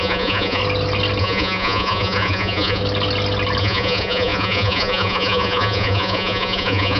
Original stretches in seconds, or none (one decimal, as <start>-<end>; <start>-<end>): 0.6-1.2; 2.8-3.6